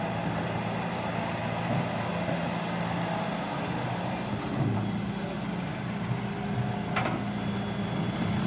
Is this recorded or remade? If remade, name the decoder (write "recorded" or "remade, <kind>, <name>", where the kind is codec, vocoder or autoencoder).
recorded